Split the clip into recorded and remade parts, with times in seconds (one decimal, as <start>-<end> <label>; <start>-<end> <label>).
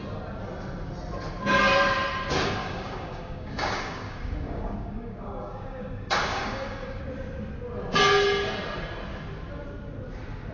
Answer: 0.0-2.6 recorded; 2.6-7.0 remade; 7.0-10.5 recorded